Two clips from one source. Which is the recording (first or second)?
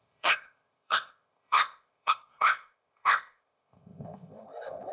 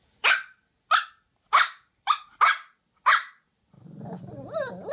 second